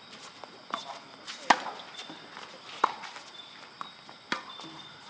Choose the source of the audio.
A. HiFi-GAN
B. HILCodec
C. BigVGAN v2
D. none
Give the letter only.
D